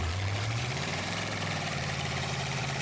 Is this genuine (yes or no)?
no